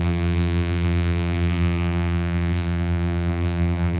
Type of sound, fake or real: fake